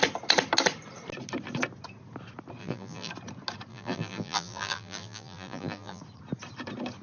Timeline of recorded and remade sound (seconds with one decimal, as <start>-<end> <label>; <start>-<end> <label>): 0.0-2.6 recorded; 2.6-3.1 remade; 3.1-3.7 recorded; 3.7-6.0 remade; 6.0-7.0 recorded